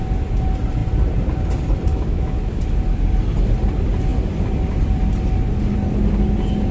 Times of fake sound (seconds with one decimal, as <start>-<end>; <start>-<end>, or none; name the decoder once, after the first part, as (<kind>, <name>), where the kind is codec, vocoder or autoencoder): 1.9-2.6 (autoencoder, DAC-VAE)